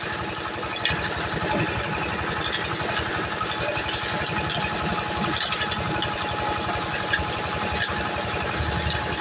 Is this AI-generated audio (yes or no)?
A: no